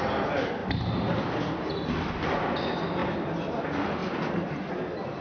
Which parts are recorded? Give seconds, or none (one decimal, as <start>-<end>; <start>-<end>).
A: 0.0-3.0; 3.6-4.0; 4.7-5.2